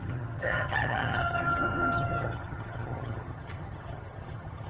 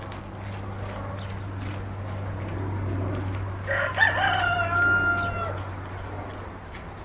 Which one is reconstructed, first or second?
first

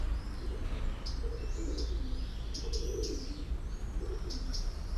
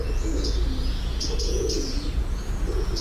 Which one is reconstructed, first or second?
second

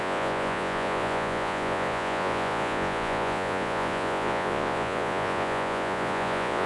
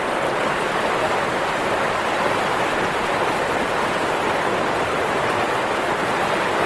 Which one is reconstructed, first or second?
first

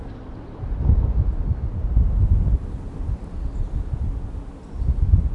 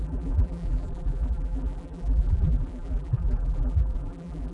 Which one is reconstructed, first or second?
second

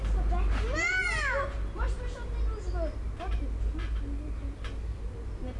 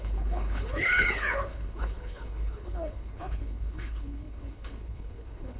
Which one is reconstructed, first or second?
second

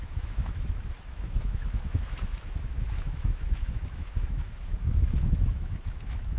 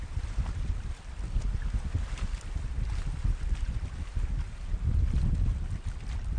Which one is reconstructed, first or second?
first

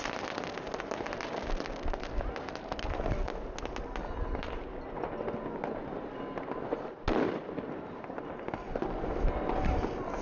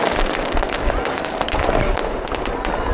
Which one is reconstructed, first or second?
second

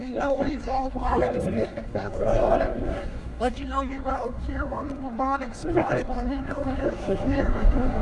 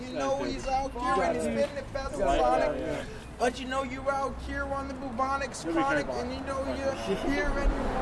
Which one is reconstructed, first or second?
first